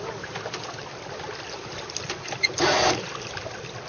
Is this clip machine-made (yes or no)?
no